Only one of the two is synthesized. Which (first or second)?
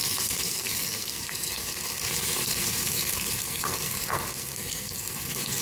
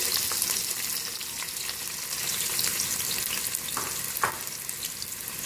first